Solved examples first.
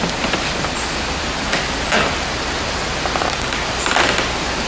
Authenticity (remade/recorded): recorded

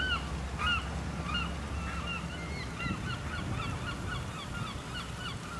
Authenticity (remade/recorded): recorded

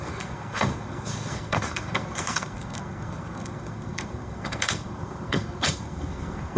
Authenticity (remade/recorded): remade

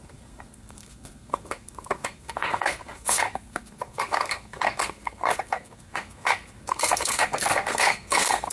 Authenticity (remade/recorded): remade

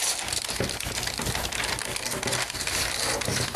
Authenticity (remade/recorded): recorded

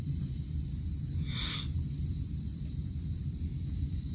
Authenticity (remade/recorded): recorded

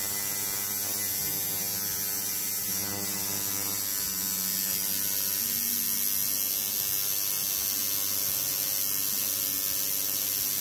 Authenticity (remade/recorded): recorded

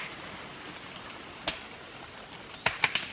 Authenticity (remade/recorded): recorded